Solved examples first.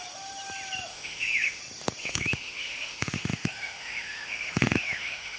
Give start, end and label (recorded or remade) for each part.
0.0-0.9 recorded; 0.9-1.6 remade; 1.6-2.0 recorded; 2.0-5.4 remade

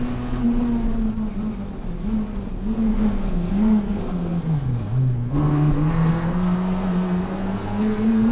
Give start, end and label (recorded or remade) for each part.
0.0-0.4 remade; 0.4-2.5 recorded; 2.5-8.3 remade

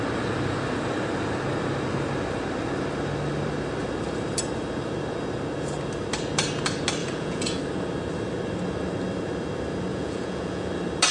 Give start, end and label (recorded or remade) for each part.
0.0-7.0 recorded; 7.0-7.6 remade; 7.6-9.9 recorded; 9.9-10.7 remade; 10.7-11.1 recorded

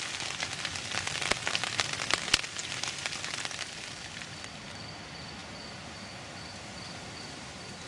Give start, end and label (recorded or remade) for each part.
0.0-7.9 recorded

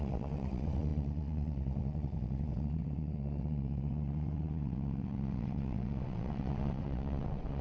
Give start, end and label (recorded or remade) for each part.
0.0-7.6 remade